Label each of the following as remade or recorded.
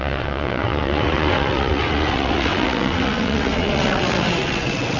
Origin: remade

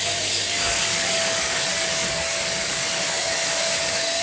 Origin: remade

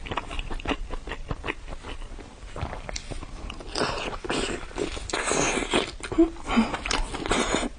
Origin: recorded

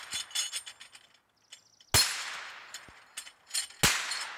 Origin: recorded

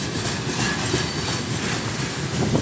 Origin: recorded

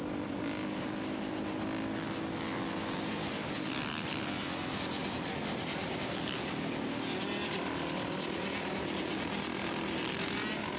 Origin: recorded